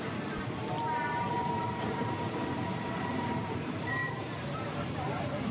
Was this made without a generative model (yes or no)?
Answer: no